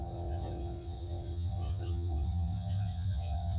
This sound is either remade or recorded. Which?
remade